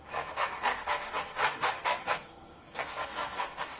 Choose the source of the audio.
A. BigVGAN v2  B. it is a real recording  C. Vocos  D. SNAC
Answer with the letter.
D